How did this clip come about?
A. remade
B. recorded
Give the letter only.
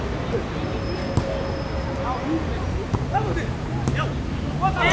B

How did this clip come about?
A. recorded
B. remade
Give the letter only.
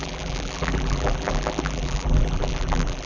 B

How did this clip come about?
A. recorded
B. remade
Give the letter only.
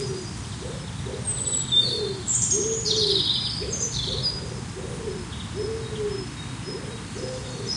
A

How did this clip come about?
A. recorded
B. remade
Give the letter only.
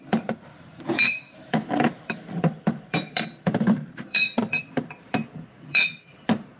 B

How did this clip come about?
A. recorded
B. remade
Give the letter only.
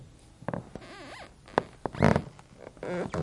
A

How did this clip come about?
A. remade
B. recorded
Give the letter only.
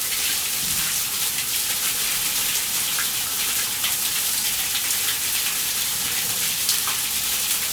A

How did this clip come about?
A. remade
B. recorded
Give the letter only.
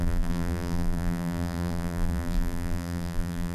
A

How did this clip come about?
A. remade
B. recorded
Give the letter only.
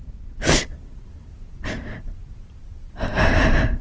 A